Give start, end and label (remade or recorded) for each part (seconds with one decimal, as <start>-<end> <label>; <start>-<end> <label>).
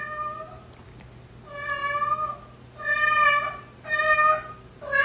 0.0-5.0 recorded